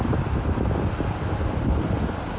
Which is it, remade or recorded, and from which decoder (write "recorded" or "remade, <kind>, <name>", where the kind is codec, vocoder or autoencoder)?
recorded